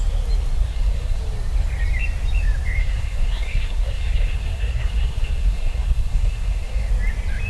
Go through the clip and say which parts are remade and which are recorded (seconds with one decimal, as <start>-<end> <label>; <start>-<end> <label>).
0.0-0.7 recorded; 0.7-1.2 remade; 1.2-2.8 recorded; 2.8-6.9 remade; 6.9-7.5 recorded